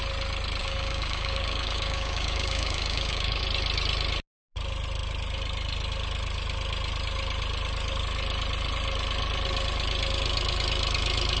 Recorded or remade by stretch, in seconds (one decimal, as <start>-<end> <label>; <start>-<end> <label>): 0.0-0.6 recorded; 0.6-3.4 remade; 3.4-11.4 recorded